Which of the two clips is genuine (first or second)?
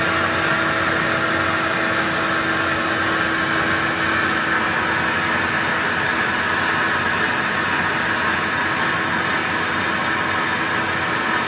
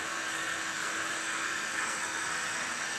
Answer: first